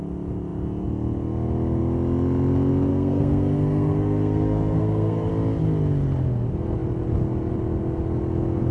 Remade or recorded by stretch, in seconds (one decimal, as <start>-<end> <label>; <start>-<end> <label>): 0.0-2.9 recorded; 2.9-5.3 remade; 5.3-8.7 recorded